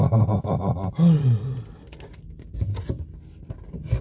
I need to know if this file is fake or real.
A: real